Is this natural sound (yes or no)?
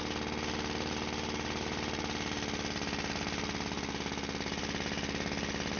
yes